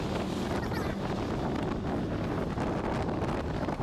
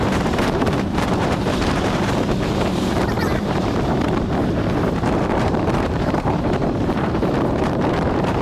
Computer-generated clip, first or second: second